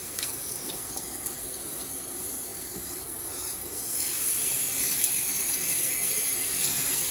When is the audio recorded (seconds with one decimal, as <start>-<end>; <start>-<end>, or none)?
none